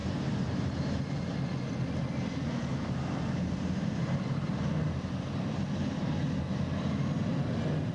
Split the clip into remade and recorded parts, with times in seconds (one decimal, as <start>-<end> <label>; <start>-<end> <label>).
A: 0.0-1.1 remade; 1.1-2.7 recorded; 2.7-4.6 remade; 4.6-7.9 recorded